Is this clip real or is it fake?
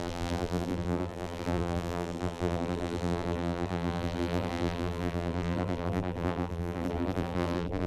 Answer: fake